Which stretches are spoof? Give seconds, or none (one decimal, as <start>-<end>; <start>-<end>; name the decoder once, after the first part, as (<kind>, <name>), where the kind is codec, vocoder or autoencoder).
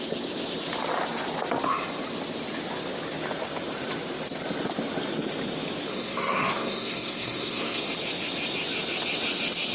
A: 5.9-7.9 (codec, SNAC)